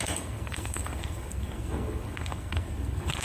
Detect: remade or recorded remade